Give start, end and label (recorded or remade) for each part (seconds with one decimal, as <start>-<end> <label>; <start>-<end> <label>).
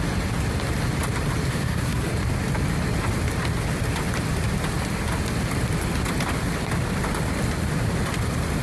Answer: 0.0-1.5 recorded; 1.5-2.1 remade; 2.1-8.6 recorded